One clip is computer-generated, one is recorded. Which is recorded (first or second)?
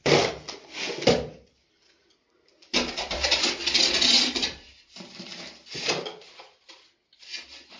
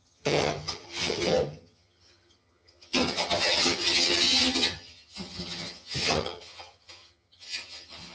first